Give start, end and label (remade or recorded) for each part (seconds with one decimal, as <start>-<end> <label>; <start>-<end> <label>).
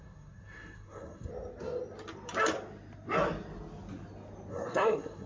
0.0-1.3 remade; 1.3-4.5 recorded; 4.5-5.3 remade